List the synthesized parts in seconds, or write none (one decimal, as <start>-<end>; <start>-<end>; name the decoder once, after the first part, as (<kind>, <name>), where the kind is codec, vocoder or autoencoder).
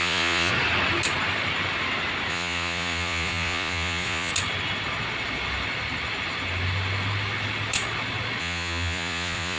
0.0-0.5 (vocoder, Vocos); 2.3-4.3; 8.4-9.6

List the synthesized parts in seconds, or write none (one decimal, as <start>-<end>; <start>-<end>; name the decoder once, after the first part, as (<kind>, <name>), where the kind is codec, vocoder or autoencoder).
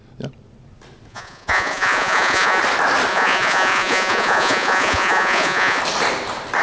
1.1-2.6 (vocoder, Vocos); 3.1-5.8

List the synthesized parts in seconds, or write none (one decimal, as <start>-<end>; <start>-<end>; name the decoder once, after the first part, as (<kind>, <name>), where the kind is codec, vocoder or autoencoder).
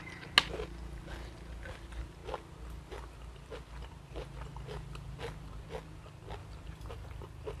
none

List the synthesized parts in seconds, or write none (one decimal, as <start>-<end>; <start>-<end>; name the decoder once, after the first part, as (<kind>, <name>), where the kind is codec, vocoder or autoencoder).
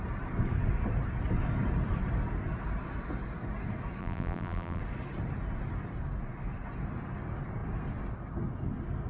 4.0-4.8 (vocoder, BigVGAN v2)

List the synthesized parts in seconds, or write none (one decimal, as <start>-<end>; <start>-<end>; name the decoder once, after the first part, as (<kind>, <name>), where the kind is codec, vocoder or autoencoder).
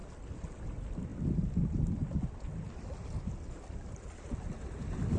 none